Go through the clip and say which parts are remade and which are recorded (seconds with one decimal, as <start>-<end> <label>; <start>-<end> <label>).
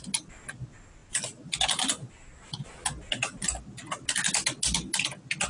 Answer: 0.0-5.5 recorded